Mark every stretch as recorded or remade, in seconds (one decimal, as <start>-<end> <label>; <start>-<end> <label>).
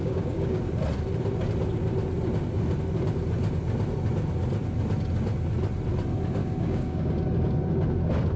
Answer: 0.0-0.6 remade; 0.6-6.4 recorded; 6.4-7.1 remade; 7.1-8.4 recorded